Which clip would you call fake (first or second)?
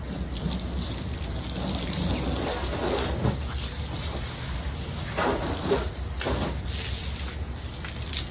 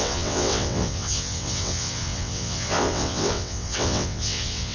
second